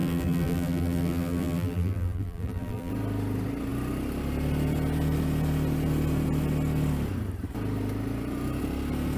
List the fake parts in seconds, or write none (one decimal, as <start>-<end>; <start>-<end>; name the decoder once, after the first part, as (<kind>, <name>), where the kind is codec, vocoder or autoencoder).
0.0-2.9 (vocoder, BigVGAN v2)